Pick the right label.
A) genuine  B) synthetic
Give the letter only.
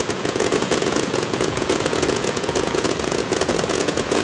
B